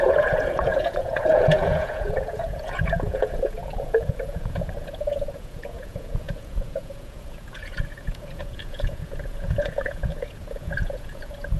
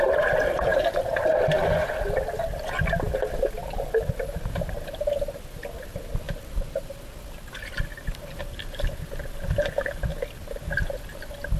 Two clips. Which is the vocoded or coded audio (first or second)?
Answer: first